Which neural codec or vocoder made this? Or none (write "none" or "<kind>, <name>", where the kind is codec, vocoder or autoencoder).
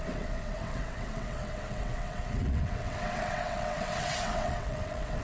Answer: vocoder, WaveNeXt